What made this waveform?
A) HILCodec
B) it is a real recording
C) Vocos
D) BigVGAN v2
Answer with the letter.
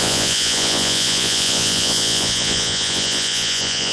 C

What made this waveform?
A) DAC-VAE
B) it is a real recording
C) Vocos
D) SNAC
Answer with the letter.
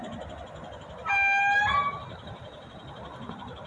B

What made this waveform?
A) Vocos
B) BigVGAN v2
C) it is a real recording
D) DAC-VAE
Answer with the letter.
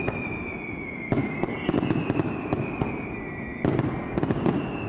C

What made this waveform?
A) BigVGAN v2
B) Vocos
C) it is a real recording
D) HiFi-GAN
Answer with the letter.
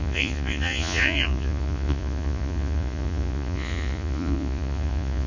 B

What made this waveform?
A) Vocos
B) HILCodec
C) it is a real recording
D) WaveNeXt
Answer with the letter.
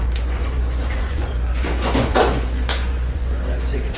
A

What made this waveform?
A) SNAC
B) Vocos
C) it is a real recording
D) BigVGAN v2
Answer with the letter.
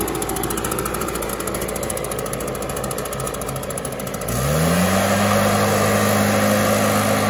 C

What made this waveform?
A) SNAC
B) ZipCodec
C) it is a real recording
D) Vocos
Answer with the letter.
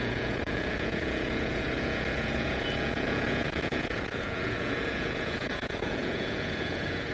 D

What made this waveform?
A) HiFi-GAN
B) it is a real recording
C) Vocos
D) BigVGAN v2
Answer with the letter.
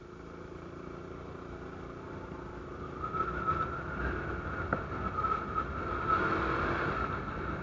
B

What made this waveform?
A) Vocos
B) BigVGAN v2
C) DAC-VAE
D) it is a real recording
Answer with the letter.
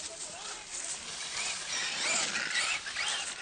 D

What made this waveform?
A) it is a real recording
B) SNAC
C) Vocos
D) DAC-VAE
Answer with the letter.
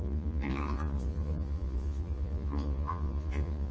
C